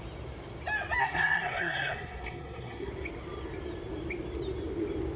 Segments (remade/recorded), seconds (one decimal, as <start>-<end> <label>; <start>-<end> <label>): 0.0-1.0 recorded; 1.0-2.9 remade; 2.9-5.2 recorded